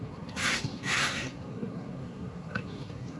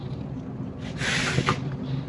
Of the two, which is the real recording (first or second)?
second